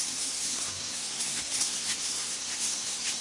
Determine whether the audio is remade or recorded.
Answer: remade